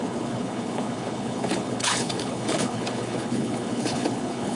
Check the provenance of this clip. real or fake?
fake